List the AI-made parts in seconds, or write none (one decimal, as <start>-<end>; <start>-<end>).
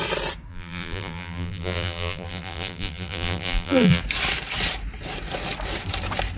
0.5-4.0